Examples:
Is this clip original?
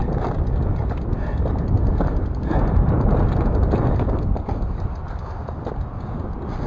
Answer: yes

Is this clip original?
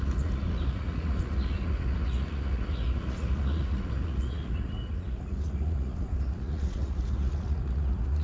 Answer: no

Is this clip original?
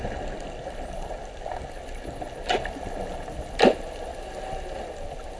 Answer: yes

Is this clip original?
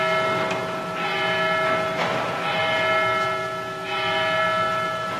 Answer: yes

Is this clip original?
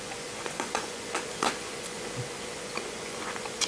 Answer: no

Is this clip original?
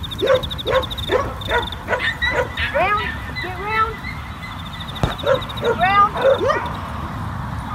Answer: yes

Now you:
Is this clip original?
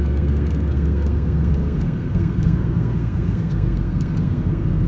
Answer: no